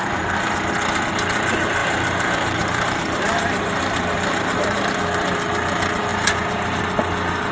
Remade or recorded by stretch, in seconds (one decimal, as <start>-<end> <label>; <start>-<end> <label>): 0.0-0.7 remade; 0.7-1.8 recorded; 1.8-4.9 remade; 4.9-6.1 recorded; 6.1-6.8 remade; 6.8-7.5 recorded